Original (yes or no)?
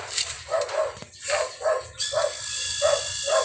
yes